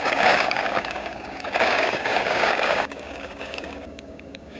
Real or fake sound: fake